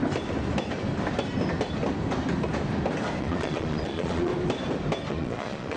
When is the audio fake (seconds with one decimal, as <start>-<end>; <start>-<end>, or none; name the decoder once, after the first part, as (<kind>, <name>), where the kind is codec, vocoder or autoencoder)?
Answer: 3.2-4.3 (vocoder, Vocos); 5.1-5.8